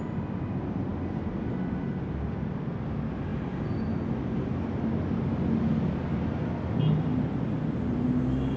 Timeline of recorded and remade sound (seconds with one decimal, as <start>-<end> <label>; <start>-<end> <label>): 0.0-8.6 recorded